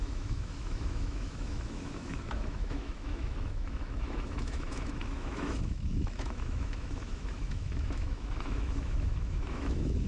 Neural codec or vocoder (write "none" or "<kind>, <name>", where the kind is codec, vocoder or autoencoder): autoencoder, DAC-VAE